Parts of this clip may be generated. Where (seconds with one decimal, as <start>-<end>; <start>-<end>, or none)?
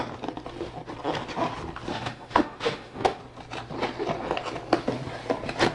1.9-3.2